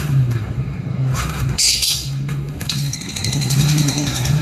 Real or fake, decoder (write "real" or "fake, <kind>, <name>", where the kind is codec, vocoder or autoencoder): fake, codec, SNAC